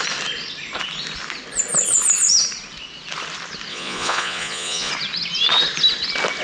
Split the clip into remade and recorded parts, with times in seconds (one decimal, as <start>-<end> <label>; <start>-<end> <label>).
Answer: 0.0-3.7 recorded; 3.7-4.9 remade; 4.9-6.4 recorded